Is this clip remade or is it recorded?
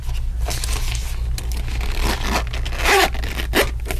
recorded